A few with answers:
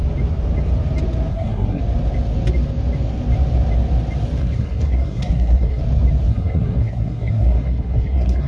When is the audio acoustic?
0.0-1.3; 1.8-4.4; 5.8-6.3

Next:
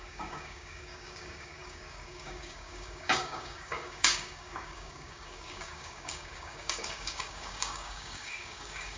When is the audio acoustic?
none

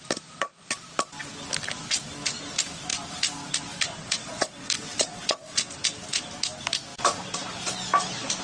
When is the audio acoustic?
0.0-4.0; 5.7-8.4

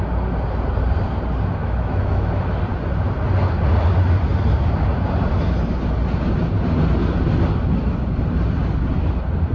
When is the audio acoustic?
0.0-1.6; 2.6-9.5

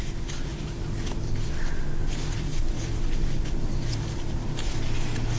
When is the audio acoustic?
0.0-0.5; 1.3-2.0